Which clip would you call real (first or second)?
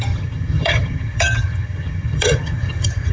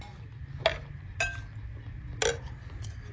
second